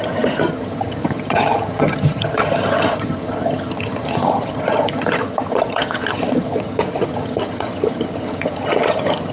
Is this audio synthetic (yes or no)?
yes